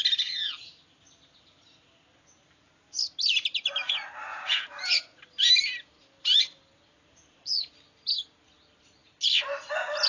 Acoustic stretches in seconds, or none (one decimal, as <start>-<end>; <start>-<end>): 0.0-4.3; 4.9-10.1

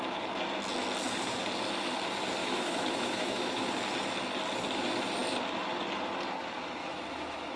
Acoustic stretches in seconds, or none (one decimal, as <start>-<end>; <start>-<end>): 0.0-2.4; 3.7-6.8

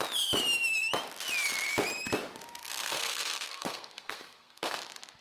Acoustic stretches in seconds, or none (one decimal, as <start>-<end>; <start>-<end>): 0.0-2.6; 4.8-5.2

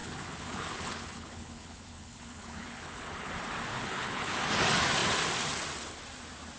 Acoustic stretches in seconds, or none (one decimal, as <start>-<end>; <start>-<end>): 3.3-3.7; 4.4-6.6